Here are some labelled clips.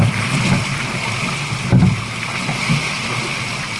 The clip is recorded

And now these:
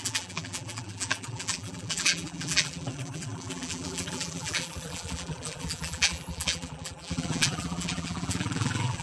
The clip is remade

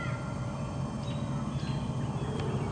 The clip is recorded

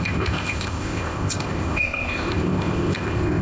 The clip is remade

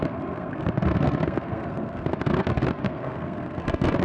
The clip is remade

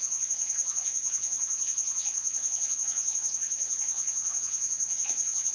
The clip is remade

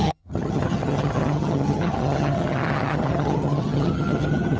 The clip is remade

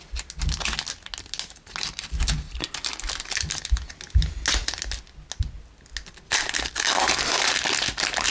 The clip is recorded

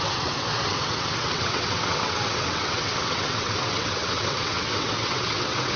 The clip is remade